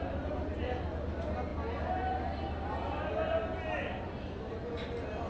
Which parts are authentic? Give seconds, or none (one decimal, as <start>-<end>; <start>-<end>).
0.0-5.3